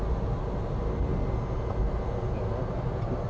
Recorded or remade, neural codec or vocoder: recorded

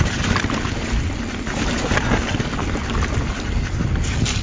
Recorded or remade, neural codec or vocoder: recorded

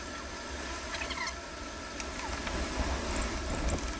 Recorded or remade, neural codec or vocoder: recorded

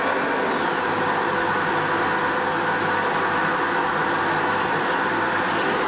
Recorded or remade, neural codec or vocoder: recorded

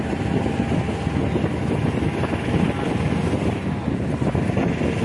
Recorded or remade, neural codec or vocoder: recorded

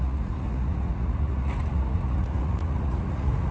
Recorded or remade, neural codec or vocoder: remade, vocoder, Vocos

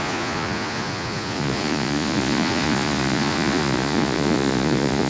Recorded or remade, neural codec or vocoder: remade, vocoder, Vocos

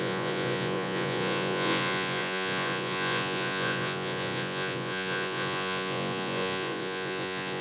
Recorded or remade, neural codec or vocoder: remade, vocoder, Vocos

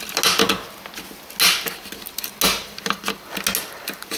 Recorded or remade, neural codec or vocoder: recorded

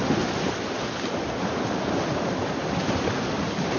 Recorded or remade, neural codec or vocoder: recorded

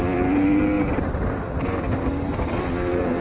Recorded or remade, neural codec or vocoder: recorded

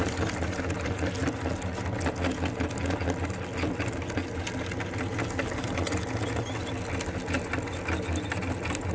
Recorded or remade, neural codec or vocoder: recorded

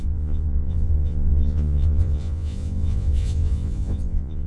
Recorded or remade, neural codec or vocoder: remade, vocoder, Vocos